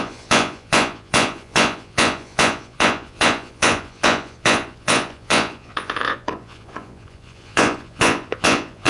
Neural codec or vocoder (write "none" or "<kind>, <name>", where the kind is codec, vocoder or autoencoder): vocoder, Vocos